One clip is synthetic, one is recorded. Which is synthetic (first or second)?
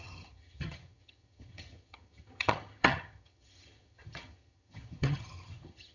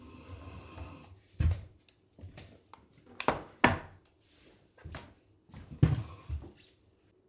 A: first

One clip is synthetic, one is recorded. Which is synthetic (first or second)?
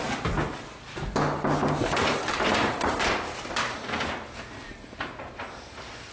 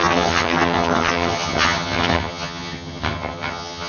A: second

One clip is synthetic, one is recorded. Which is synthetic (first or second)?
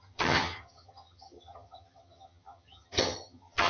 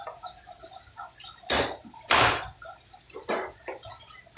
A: first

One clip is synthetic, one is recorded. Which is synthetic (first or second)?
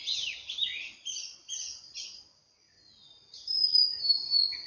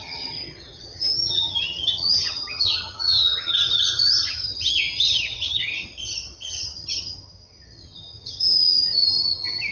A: second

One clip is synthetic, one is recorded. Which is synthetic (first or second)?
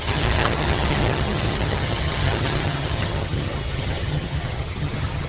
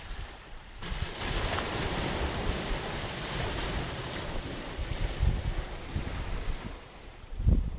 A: first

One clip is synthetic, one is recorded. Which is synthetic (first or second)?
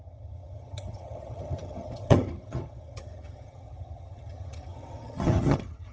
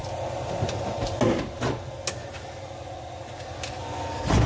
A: first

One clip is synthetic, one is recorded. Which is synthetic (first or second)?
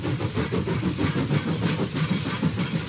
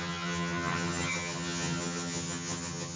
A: second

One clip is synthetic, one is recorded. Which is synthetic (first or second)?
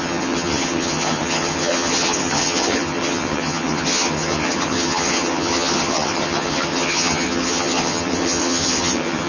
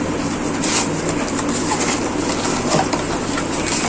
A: first